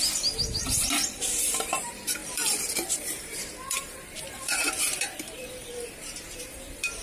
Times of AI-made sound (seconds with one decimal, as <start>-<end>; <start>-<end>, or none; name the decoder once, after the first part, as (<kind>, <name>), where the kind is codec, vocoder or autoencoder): 0.0-7.0 (vocoder, BigVGAN v2)